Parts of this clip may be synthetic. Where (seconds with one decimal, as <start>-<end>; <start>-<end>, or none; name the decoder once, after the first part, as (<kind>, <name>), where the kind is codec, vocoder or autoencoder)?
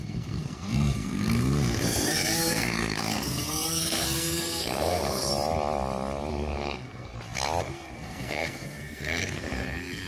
0.0-5.3 (codec, SNAC); 6.3-7.1; 7.6-10.1